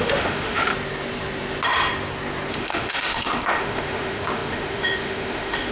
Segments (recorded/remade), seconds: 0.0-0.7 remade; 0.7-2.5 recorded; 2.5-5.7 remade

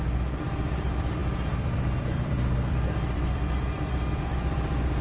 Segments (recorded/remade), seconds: 0.0-5.0 remade

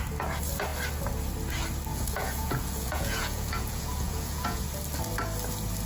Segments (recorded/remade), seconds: 0.0-1.9 recorded; 1.9-4.6 remade; 4.6-5.9 recorded